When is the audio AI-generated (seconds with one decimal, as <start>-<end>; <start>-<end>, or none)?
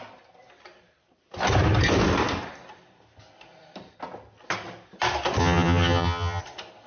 5.4-6.4